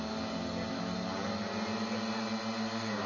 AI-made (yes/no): no